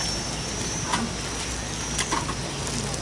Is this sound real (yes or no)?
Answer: yes